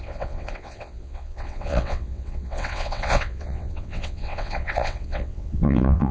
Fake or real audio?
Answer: fake